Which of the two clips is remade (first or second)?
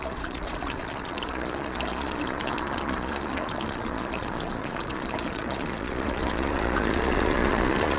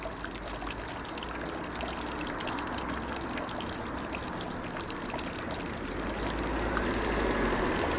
first